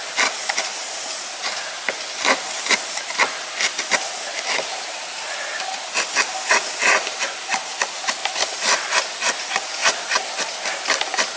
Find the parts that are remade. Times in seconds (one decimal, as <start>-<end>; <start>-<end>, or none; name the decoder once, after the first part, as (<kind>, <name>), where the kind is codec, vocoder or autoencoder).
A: 8.2-8.8 (vocoder, BigVGAN v2); 9.8-10.4